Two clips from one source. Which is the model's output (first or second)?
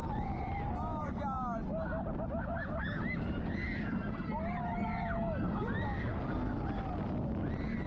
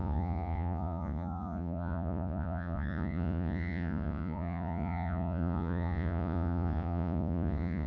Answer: second